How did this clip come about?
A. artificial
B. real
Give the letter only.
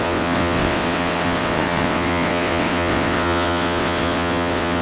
A